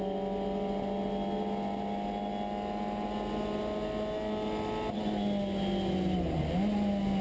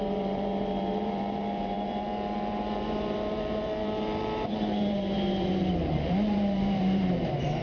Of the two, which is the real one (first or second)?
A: first